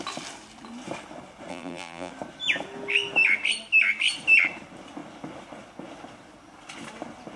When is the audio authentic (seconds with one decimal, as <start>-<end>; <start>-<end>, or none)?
0.0-1.5; 2.1-7.4